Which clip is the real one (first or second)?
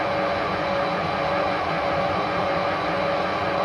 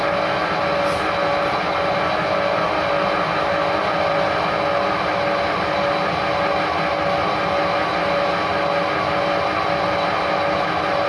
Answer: second